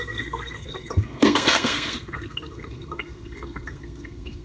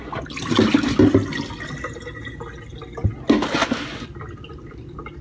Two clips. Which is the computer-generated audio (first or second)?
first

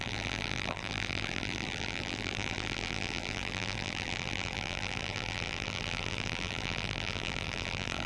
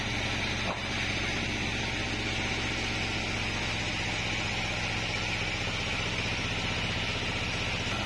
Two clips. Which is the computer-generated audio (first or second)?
first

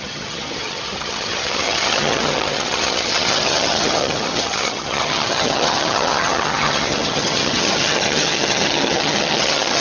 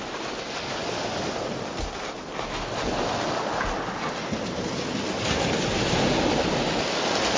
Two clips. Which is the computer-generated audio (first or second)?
first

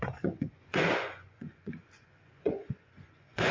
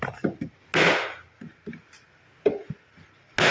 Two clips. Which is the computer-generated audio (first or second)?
first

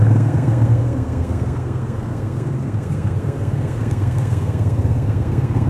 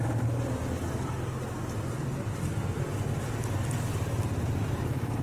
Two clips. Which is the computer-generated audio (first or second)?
first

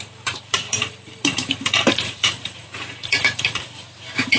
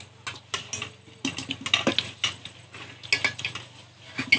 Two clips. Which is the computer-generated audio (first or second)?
first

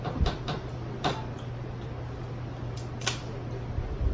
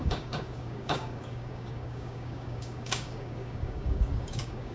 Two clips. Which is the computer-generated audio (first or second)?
second